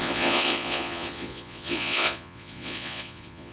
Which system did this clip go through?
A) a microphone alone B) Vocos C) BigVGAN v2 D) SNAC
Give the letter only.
B